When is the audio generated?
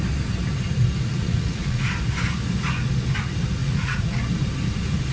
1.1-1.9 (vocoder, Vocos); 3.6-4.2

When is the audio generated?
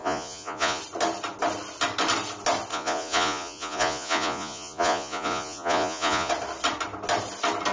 0.0-0.8 (vocoder, Vocos); 2.7-6.3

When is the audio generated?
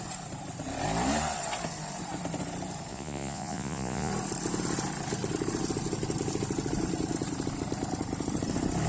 2.9-4.1 (vocoder, Vocos)